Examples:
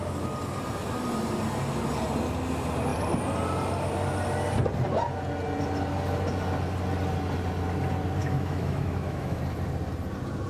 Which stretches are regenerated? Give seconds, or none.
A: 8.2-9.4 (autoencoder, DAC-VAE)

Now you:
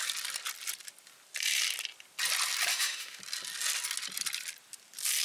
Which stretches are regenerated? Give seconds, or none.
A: 2.7-3.2 (autoencoder, DAC-VAE)

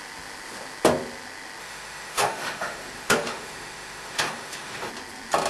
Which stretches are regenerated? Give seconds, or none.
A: 1.6-4.9 (autoencoder, DAC-VAE)